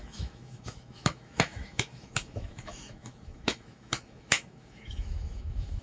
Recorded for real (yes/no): no